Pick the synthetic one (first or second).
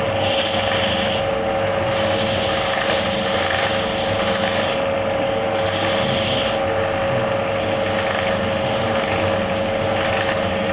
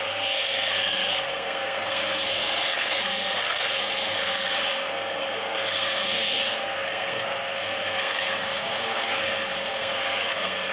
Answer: second